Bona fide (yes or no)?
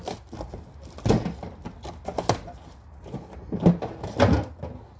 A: yes